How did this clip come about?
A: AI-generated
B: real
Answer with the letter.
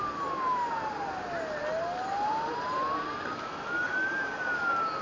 B